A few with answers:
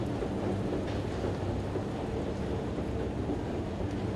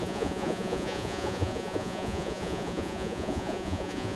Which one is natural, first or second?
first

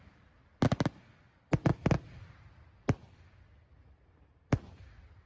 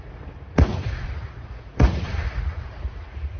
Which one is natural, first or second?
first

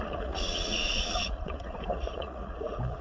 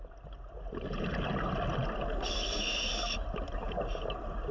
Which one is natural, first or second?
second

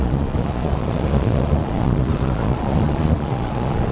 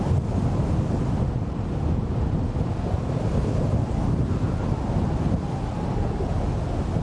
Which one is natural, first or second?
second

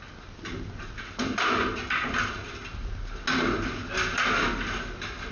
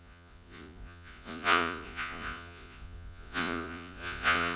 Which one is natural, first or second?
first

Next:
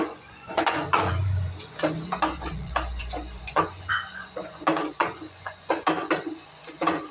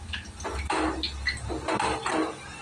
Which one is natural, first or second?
second